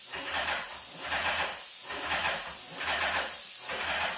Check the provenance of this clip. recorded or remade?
recorded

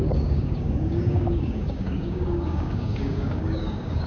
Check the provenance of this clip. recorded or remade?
remade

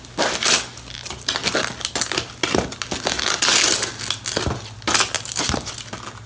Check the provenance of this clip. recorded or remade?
recorded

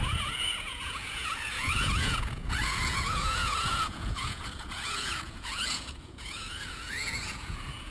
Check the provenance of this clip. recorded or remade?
remade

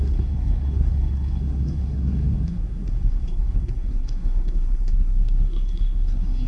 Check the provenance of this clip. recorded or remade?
remade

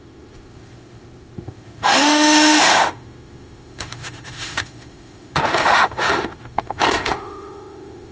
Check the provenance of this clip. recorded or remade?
remade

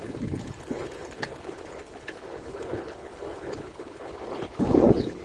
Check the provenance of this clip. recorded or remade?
remade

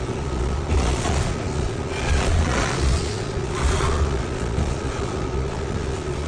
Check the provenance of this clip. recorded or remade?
remade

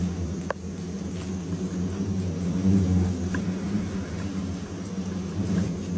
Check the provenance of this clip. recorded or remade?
recorded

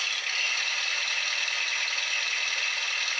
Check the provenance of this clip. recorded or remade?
recorded